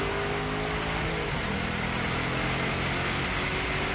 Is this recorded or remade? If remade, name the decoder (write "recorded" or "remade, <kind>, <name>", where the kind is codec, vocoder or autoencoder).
recorded